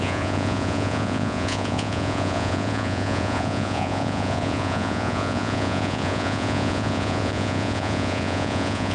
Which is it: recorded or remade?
remade